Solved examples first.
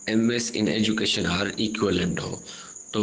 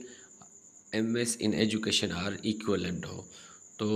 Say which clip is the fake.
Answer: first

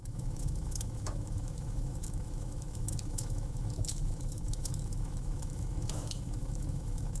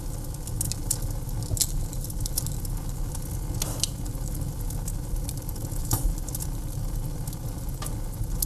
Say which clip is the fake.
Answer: first